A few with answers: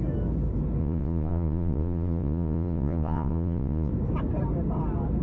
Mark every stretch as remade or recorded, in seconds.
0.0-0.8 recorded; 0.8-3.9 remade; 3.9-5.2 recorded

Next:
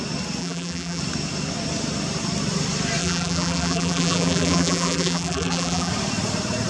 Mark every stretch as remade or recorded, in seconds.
0.0-0.4 recorded; 0.4-1.0 remade; 1.0-3.0 recorded; 3.0-5.9 remade; 5.9-6.7 recorded

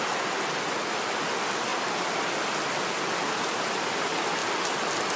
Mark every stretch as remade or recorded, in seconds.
0.0-1.7 recorded; 1.7-3.6 remade; 3.6-5.2 recorded

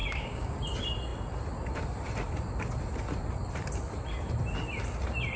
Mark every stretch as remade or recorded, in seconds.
0.0-0.6 remade; 0.6-5.4 recorded

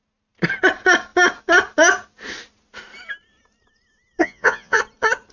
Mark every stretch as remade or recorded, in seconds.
0.0-4.2 recorded; 4.2-4.8 remade; 4.8-5.3 recorded

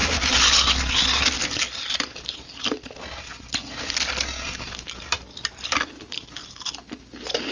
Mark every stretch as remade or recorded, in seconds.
0.0-7.5 recorded